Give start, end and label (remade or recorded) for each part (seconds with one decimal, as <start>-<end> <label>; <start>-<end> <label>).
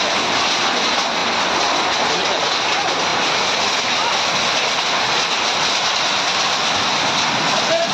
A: 0.0-7.9 recorded